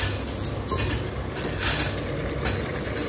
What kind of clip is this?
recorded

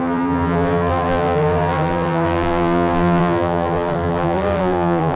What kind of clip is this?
remade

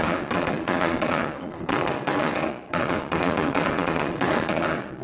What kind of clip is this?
remade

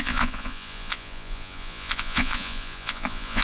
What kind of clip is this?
remade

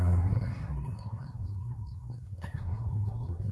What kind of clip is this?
remade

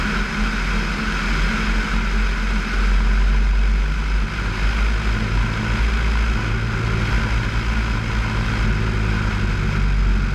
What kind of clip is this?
recorded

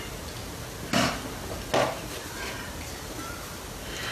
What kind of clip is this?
recorded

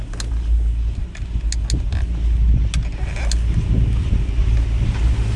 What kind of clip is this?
recorded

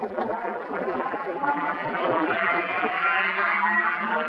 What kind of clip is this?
remade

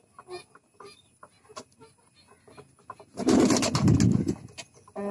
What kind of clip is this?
recorded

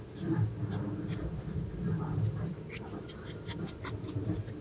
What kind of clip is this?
recorded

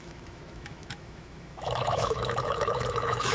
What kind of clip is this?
remade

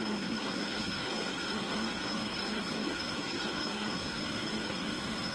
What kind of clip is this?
remade